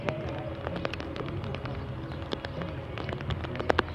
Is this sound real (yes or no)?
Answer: no